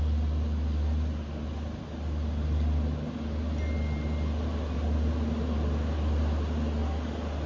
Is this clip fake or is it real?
real